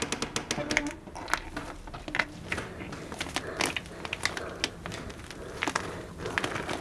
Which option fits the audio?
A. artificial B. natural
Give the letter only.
B